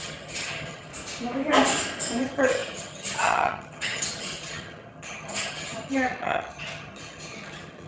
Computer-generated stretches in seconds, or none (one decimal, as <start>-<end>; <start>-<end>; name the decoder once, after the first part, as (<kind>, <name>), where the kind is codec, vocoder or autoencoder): 0.0-0.9 (vocoder, HiFi-GAN); 2.2-7.9